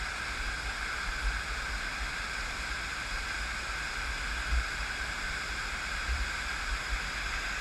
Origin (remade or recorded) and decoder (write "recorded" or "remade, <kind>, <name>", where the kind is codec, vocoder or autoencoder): recorded